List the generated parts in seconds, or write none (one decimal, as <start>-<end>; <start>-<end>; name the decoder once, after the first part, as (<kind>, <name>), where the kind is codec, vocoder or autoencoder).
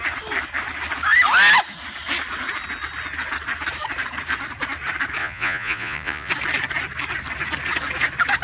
5.2-6.3 (vocoder, Vocos)